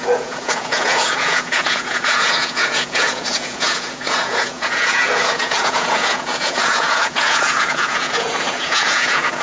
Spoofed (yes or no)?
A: yes